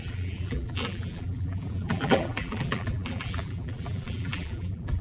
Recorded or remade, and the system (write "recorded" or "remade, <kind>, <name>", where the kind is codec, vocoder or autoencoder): remade, vocoder, BigVGAN v2